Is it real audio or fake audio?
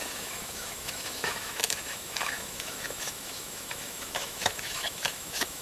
fake